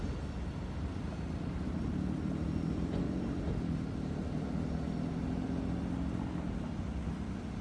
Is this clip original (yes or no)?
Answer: yes